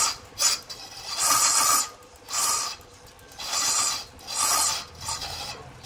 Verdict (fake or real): real